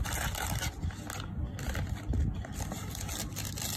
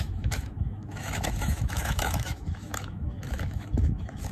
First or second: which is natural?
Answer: first